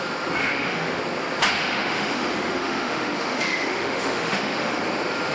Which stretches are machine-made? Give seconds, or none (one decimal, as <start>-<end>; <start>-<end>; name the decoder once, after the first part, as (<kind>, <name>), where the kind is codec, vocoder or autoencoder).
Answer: 0.4-1.0 (autoencoder, DAC-VAE); 1.6-4.8